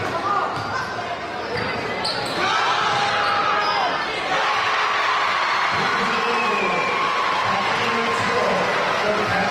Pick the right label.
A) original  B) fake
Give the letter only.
A